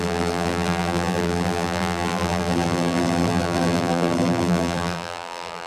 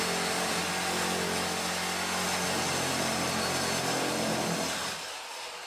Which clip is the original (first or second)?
second